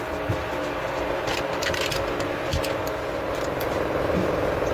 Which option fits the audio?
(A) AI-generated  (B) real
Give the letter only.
B